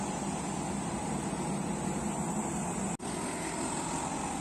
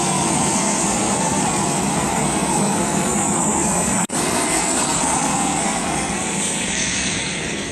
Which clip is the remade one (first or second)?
second